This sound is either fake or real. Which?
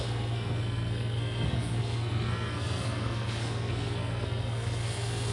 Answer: fake